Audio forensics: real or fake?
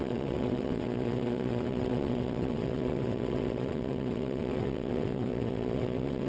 fake